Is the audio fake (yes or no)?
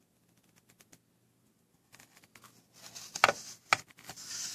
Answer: no